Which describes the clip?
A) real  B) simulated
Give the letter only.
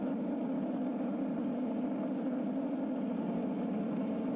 A